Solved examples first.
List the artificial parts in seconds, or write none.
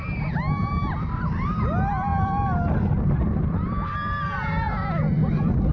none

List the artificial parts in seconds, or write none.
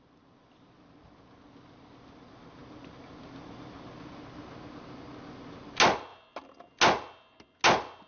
none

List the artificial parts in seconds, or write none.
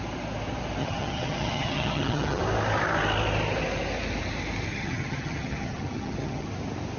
0.8-2.4 (vocoder, HiFi-GAN); 4.7-6.5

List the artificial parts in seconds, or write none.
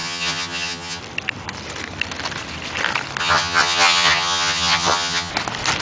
0.0-1.0 (vocoder, HiFi-GAN); 3.2-5.3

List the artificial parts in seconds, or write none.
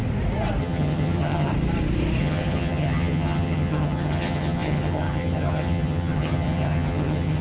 0.6-1.5 (vocoder, HiFi-GAN); 2.2-7.4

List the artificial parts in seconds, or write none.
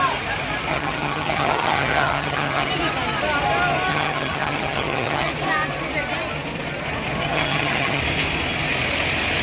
0.7-2.7 (vocoder, HiFi-GAN); 3.9-5.3; 7.2-8.0